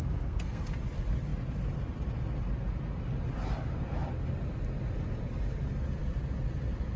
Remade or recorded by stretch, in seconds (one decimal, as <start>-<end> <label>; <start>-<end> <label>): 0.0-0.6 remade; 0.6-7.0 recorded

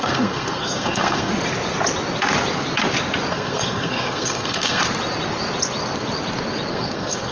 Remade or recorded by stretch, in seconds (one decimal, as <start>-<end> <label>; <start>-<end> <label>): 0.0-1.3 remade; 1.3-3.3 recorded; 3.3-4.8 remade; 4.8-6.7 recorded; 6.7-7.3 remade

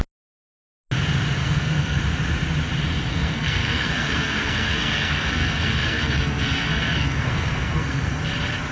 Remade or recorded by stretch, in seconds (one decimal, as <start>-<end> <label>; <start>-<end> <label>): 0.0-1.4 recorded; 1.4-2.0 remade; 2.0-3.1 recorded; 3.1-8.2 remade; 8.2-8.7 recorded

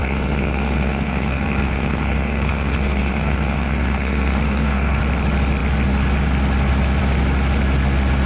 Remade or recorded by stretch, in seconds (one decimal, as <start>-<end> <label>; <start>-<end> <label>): 0.0-5.0 remade; 5.0-8.3 recorded

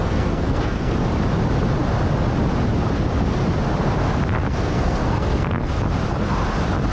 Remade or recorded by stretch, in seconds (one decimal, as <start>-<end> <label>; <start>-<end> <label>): 0.0-0.9 remade; 0.9-4.4 recorded; 4.4-5.7 remade; 5.7-6.9 recorded

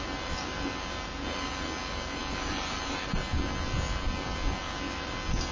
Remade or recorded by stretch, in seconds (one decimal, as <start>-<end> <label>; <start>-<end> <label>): 0.0-5.5 recorded